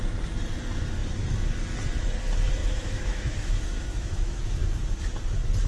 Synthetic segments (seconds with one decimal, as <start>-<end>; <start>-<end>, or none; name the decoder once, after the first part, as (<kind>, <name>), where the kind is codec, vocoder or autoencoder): 2.6-4.4 (autoencoder, DAC-VAE)